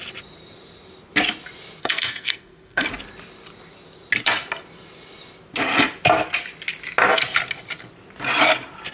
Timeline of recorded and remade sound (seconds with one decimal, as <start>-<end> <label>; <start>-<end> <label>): 0.0-1.8 recorded; 1.8-2.9 remade; 2.9-8.9 recorded